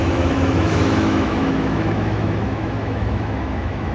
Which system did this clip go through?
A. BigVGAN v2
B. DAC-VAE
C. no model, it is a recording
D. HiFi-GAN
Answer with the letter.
B